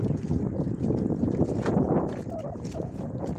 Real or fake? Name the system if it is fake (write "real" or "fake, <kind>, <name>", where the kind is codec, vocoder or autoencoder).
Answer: real